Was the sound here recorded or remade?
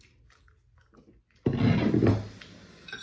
recorded